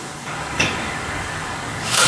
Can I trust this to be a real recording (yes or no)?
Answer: no